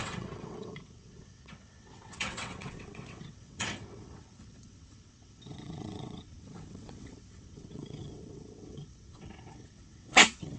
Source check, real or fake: fake